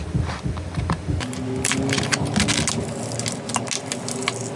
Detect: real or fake real